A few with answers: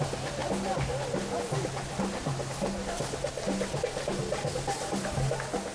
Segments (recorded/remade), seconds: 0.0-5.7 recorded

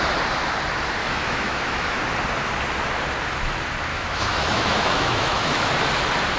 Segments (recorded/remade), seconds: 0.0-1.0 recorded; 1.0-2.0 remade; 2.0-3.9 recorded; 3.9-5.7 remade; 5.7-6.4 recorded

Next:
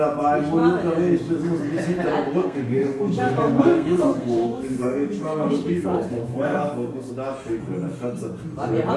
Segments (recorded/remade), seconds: 0.0-2.4 recorded; 2.4-7.1 remade; 7.1-9.0 recorded

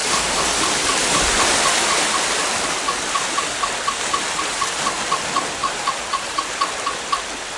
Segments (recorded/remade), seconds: 0.0-5.6 recorded; 5.6-6.4 remade; 6.4-7.6 recorded